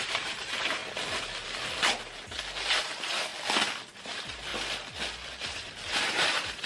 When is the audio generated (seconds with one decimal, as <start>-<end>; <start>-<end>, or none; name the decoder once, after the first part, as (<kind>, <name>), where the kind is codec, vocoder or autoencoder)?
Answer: 0.0-0.8 (vocoder, BigVGAN v2); 2.8-3.3; 3.9-4.5; 5.1-6.7